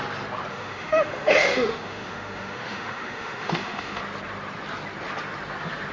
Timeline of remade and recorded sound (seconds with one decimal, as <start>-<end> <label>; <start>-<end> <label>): 0.0-0.5 recorded; 0.5-4.0 remade; 4.0-5.9 recorded